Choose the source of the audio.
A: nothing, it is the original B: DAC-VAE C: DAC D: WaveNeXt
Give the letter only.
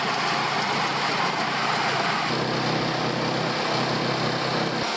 A